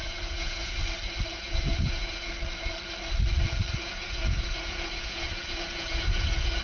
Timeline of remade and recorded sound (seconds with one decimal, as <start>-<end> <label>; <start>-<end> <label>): 0.0-0.8 remade; 0.8-1.3 recorded; 1.3-2.3 remade; 2.3-3.8 recorded; 3.8-6.6 remade